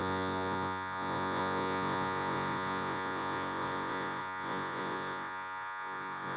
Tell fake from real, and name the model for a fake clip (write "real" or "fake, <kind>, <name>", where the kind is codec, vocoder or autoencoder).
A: fake, vocoder, Vocos